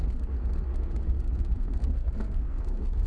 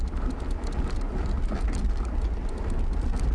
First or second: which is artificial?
first